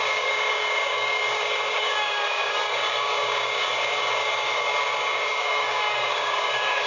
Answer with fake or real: fake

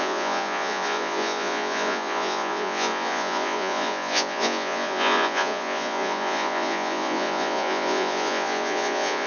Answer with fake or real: fake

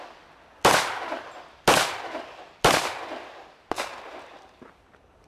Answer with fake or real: real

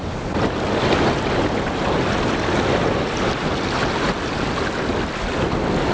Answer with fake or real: real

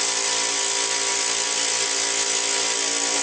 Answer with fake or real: real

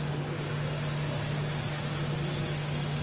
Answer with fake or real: real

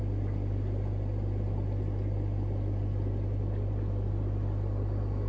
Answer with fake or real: real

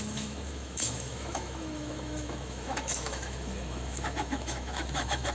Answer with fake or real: fake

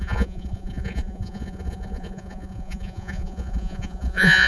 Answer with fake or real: fake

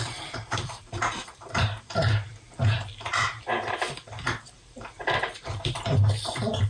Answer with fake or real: fake